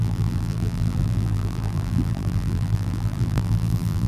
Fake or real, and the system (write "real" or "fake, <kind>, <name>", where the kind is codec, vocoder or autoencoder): fake, vocoder, BigVGAN v2